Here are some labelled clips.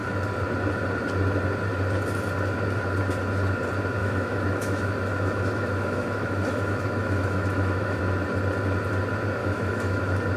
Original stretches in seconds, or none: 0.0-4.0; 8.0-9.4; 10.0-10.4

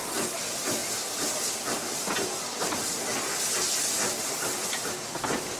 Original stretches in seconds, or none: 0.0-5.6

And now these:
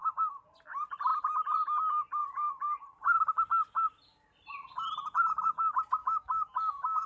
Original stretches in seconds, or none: 0.0-6.0

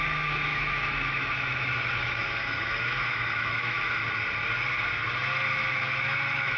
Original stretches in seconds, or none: 4.0-5.7

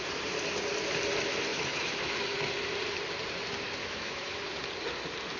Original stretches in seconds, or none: 0.0-1.5; 2.5-3.8; 4.4-5.4